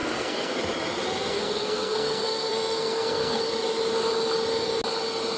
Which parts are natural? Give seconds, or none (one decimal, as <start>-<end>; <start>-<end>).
0.6-1.3; 3.4-5.4